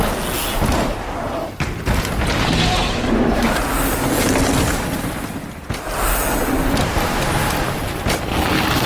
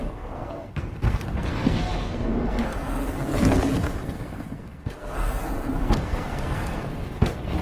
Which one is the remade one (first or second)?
second